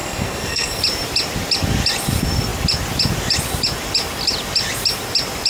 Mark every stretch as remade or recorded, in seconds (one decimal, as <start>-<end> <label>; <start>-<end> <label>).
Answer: 0.0-0.8 remade; 0.8-5.5 recorded